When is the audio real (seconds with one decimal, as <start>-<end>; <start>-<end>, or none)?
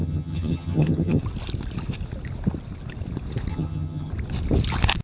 1.2-3.5; 4.1-5.0